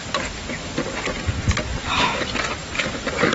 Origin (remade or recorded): recorded